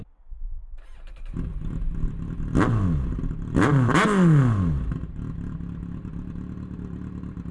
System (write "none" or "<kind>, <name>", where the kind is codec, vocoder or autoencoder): none